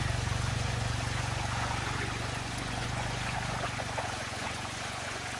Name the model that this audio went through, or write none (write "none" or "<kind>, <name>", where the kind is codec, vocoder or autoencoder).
vocoder, Vocos